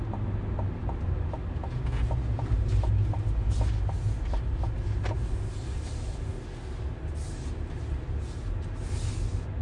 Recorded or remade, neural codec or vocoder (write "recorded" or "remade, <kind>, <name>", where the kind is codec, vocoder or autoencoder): recorded